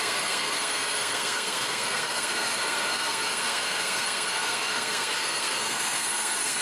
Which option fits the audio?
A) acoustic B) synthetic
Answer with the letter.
B